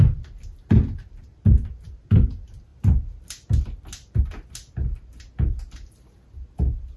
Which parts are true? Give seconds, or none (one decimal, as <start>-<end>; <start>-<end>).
0.0-7.0